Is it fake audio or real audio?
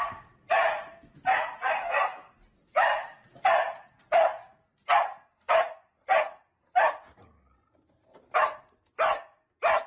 real